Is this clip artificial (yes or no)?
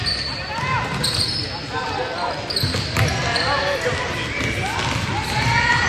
no